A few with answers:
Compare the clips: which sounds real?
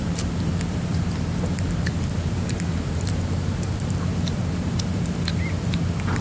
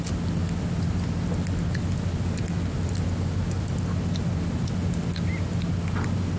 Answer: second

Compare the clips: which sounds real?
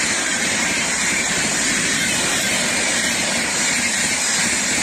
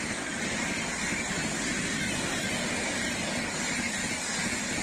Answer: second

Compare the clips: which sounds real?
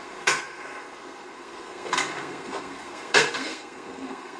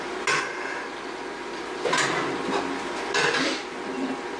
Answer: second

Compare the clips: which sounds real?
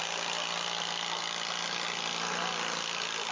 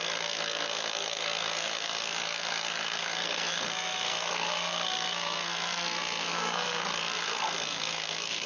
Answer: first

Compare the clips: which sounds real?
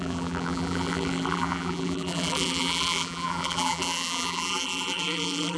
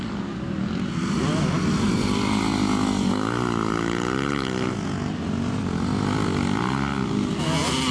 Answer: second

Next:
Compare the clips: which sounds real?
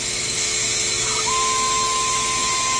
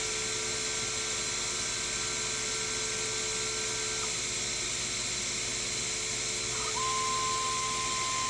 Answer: second